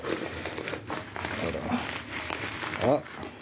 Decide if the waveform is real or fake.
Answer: real